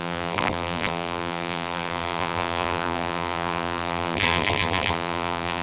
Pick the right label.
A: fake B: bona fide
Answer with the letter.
A